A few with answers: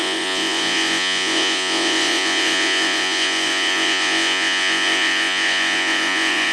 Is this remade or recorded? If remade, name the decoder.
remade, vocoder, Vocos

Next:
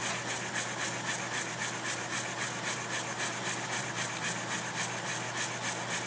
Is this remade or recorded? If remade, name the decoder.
recorded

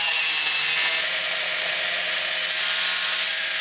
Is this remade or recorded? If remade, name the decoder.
recorded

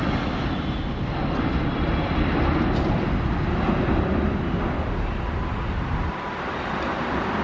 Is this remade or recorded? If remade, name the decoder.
recorded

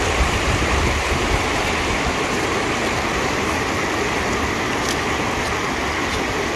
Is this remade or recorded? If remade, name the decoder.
recorded